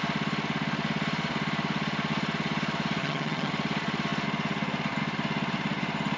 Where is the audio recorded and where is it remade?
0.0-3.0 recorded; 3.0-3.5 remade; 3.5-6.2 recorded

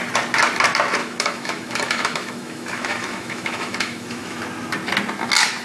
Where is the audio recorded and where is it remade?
0.0-1.0 recorded; 1.0-4.4 remade; 4.4-5.6 recorded

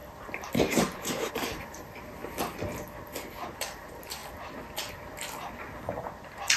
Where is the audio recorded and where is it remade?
0.0-2.2 remade; 2.2-3.5 recorded; 3.5-4.2 remade; 4.2-6.6 recorded

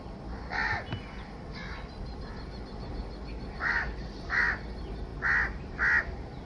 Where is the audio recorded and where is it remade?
0.0-6.5 recorded

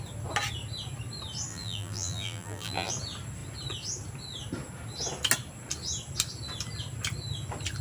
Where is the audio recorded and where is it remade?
0.0-1.5 recorded; 1.5-2.9 remade; 2.9-7.8 recorded